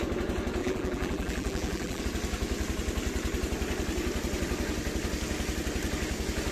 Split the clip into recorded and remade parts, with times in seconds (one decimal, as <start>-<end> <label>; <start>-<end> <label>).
0.0-0.6 recorded; 0.6-2.0 remade; 2.0-6.5 recorded